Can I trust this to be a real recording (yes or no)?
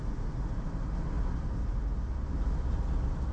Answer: yes